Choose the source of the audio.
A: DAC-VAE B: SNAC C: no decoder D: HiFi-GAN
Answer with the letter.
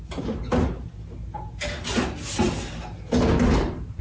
C